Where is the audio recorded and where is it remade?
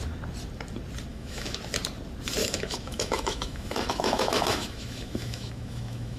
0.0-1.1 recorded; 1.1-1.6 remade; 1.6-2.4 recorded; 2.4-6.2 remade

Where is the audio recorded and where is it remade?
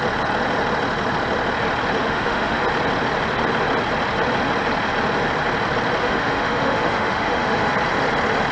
0.0-2.0 recorded; 2.0-2.6 remade; 2.6-6.0 recorded; 6.0-7.7 remade; 7.7-8.5 recorded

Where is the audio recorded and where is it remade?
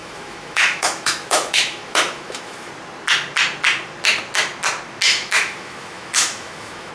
0.0-2.7 remade; 2.7-5.1 recorded; 5.1-6.9 remade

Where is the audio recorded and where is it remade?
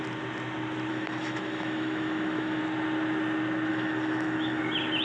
0.0-0.9 recorded; 0.9-2.6 remade; 2.6-3.7 recorded; 3.7-4.6 remade; 4.6-5.0 recorded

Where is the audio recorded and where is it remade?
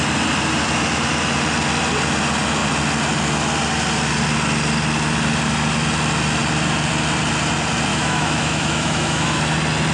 0.0-7.9 recorded; 7.9-9.4 remade; 9.4-9.9 recorded